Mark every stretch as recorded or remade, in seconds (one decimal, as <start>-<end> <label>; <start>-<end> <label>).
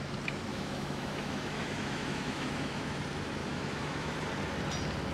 0.0-0.5 recorded; 0.5-3.0 remade; 3.0-3.4 recorded; 3.4-4.2 remade; 4.2-5.1 recorded